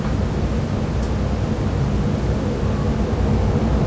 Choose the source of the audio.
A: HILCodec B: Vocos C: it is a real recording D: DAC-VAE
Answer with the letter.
C